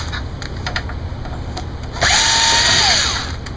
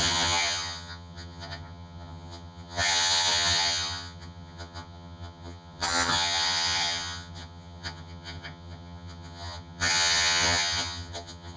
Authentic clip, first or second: first